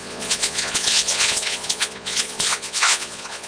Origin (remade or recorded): remade